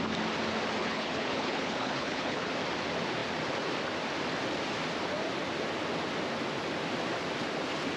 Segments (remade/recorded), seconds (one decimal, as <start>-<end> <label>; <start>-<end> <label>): 0.0-0.8 recorded; 0.8-2.5 remade; 2.5-8.0 recorded